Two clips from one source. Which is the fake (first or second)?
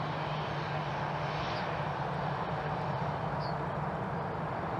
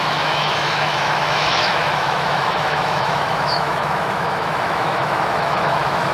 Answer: second